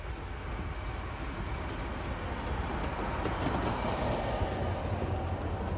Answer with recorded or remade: recorded